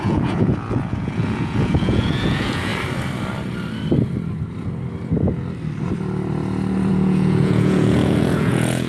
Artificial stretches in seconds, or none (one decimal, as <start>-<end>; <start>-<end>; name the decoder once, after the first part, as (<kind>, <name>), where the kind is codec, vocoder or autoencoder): 0.0-2.7 (vocoder, Vocos); 6.9-8.9